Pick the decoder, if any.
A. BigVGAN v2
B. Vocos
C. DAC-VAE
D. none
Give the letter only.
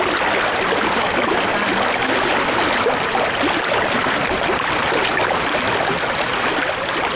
D